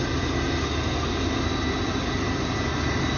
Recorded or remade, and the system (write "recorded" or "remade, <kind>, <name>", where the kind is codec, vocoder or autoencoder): recorded